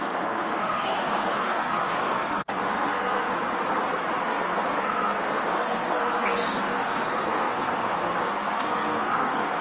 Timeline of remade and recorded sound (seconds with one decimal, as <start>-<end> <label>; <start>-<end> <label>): 0.0-3.3 remade; 3.3-4.2 recorded; 4.2-9.6 remade